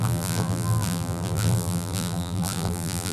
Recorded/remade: remade